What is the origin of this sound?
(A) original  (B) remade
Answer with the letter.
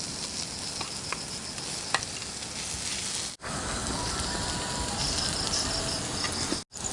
A